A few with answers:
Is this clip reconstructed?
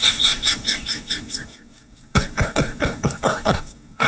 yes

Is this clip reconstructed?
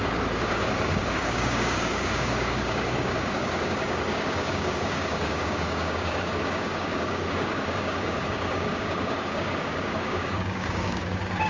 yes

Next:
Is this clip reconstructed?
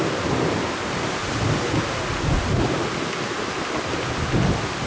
no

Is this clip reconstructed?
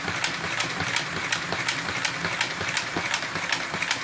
no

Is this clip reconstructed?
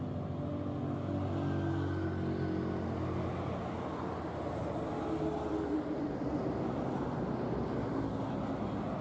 no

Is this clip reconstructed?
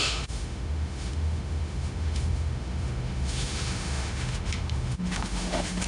yes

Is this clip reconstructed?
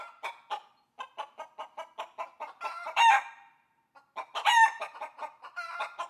no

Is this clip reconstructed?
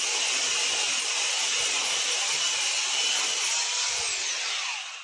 no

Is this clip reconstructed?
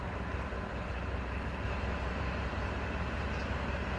yes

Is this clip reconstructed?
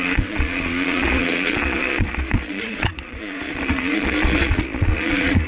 yes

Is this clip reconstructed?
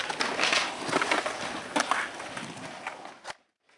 no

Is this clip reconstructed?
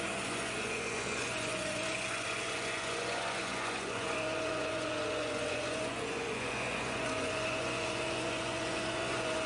yes